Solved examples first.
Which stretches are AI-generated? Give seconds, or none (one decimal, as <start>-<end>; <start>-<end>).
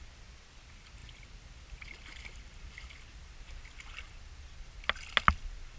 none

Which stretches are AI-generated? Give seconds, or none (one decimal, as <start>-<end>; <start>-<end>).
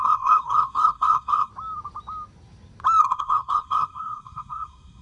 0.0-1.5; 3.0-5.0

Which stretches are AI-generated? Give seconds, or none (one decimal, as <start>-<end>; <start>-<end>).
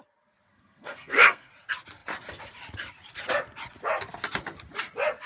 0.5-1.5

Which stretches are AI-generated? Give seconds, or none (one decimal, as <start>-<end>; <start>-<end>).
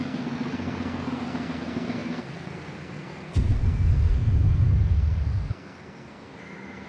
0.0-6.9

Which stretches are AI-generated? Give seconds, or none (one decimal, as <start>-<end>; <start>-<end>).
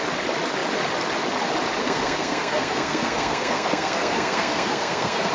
1.8-5.3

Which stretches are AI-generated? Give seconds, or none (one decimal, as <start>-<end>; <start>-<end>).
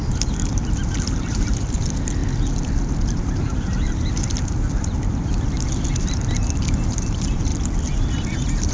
none